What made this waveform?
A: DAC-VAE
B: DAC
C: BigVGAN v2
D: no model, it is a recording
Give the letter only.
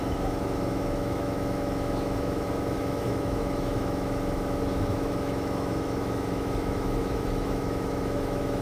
A